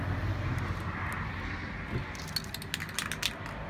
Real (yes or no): yes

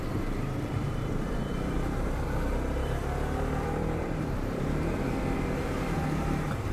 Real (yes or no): no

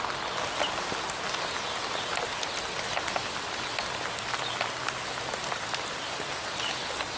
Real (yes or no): yes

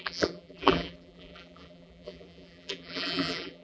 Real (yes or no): no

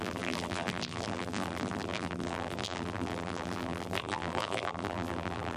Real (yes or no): no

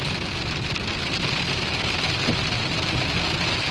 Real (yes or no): yes